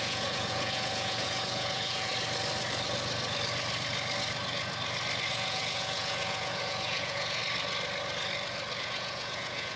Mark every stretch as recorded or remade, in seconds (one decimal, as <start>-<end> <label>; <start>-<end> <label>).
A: 0.0-2.1 remade; 2.1-5.3 recorded; 5.3-7.4 remade; 7.4-8.8 recorded; 8.8-9.8 remade